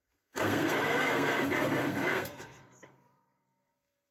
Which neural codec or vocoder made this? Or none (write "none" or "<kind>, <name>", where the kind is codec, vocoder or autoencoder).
codec, SNAC